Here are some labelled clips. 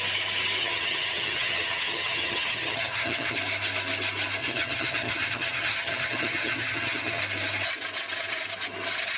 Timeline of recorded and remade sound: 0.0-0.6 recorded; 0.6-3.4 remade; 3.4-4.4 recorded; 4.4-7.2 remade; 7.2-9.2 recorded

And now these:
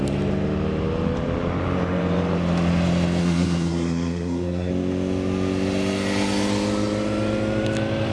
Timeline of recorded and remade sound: 0.0-3.2 recorded; 3.2-4.7 remade; 4.7-8.1 recorded

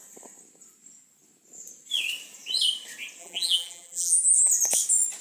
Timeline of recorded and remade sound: 0.0-3.2 recorded; 3.2-4.5 remade; 4.5-5.2 recorded

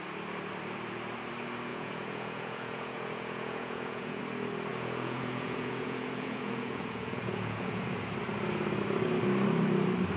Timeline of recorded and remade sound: 0.0-1.7 recorded; 1.7-4.2 remade; 4.2-4.7 recorded; 4.7-8.0 remade; 8.0-10.2 recorded

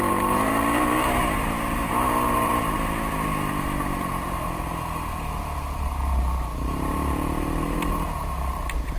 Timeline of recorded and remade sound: 0.0-2.5 remade; 2.5-5.8 recorded; 5.8-9.0 remade